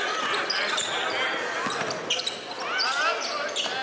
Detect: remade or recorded recorded